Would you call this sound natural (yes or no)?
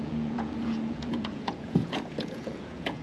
no